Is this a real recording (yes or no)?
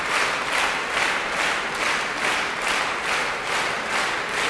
yes